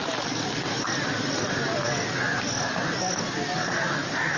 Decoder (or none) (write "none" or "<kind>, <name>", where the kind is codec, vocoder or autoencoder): none